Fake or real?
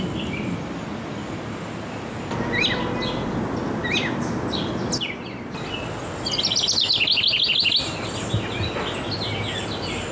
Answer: real